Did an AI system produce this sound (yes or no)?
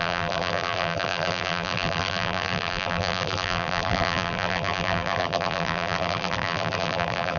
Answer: yes